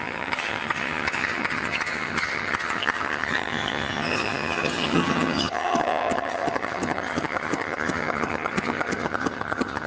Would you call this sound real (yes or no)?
no